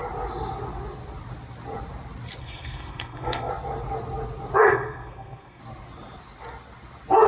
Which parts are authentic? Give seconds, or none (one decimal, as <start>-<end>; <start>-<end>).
0.0-2.4; 3.5-4.7; 5.6-7.3